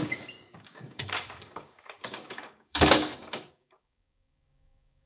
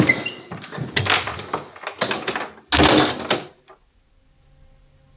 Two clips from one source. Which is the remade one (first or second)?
first